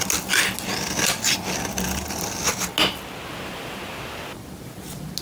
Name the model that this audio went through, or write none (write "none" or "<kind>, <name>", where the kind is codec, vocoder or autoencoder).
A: none